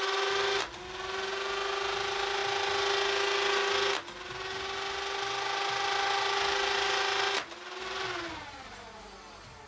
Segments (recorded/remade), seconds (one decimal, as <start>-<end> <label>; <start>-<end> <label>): 0.0-9.7 recorded